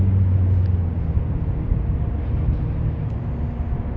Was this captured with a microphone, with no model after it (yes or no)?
yes